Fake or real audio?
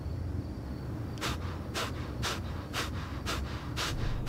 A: real